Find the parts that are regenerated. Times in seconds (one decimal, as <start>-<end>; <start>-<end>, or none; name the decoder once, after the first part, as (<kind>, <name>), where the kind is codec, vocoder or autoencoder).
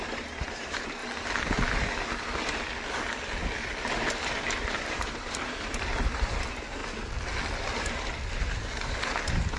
0.0-1.0 (vocoder, BigVGAN v2); 3.8-6.8; 7.8-9.6